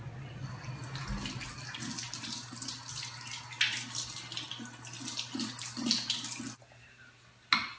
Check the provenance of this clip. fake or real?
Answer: real